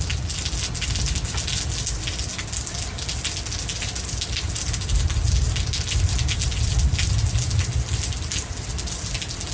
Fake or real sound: real